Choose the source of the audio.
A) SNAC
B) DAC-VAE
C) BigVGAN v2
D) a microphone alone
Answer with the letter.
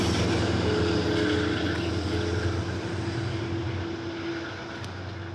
D